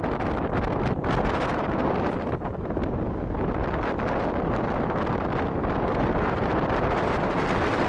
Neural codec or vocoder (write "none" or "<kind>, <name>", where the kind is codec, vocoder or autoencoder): none